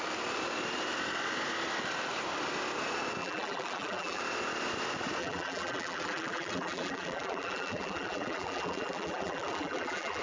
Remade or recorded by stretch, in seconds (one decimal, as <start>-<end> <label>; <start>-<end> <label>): 0.0-3.2 recorded; 3.2-4.2 remade; 4.2-5.2 recorded; 5.2-10.2 remade